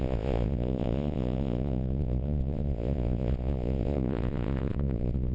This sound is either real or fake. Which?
fake